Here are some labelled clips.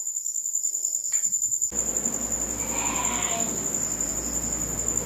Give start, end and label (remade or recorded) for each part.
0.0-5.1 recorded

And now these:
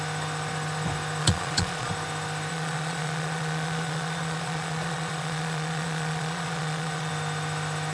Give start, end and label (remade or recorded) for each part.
0.0-1.2 recorded; 1.2-1.9 remade; 1.9-2.5 recorded; 2.5-7.1 remade; 7.1-7.9 recorded

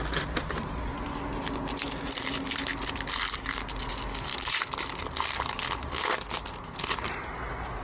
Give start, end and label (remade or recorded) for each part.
0.0-7.8 recorded

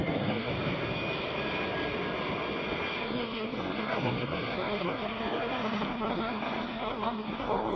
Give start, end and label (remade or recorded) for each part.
0.0-0.5 remade; 0.5-3.0 recorded; 3.0-7.8 remade

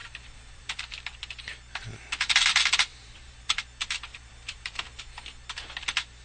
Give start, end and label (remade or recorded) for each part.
0.0-0.8 remade; 0.8-2.9 recorded; 2.9-3.6 remade; 3.6-4.1 recorded; 4.1-5.0 remade; 5.0-6.2 recorded

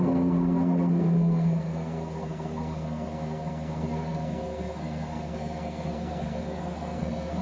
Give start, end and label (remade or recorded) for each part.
0.0-7.4 remade

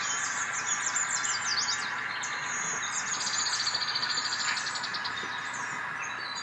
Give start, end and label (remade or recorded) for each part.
0.0-6.4 recorded